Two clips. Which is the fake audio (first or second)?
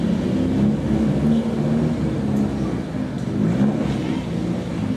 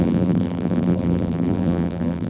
second